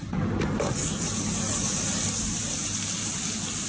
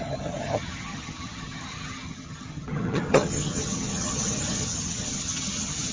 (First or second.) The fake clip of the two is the second